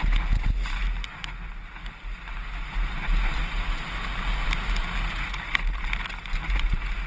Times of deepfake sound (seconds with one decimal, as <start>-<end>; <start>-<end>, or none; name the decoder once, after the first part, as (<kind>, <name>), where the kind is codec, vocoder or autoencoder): none